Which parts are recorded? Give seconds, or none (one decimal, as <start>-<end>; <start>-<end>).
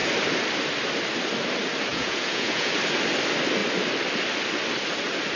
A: 0.0-1.9; 2.7-5.4